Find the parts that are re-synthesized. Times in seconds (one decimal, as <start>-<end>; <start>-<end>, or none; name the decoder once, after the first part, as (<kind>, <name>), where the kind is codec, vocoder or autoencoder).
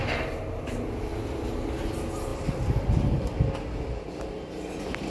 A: 1.1-1.8 (vocoder, BigVGAN v2); 2.3-2.8